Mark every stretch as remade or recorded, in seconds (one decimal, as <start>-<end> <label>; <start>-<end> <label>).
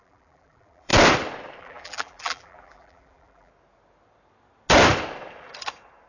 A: 0.0-0.9 remade; 0.9-1.6 recorded; 1.6-3.5 remade; 3.5-6.1 recorded